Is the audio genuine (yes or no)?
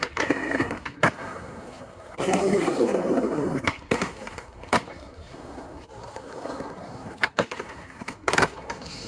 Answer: no